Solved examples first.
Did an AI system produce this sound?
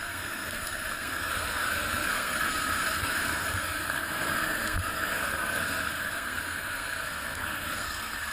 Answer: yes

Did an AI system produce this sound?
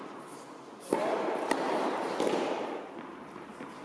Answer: yes